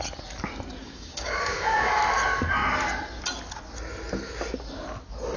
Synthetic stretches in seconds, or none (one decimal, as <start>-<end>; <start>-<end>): 0.8-2.0